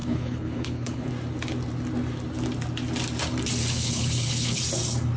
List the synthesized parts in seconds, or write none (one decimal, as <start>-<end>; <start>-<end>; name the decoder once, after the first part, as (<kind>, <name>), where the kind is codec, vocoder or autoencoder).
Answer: 0.0-1.1 (codec, HILCodec); 3.6-4.6